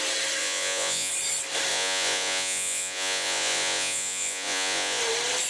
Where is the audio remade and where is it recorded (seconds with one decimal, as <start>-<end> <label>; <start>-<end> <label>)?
0.0-0.4 recorded; 0.4-1.1 remade; 1.1-1.7 recorded; 1.7-5.0 remade; 5.0-5.5 recorded